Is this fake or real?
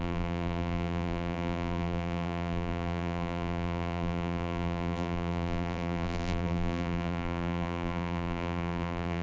fake